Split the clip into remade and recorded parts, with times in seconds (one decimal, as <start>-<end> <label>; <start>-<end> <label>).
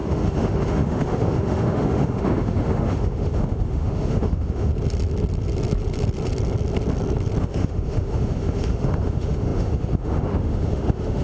0.0-4.7 remade; 4.7-7.4 recorded; 7.4-11.2 remade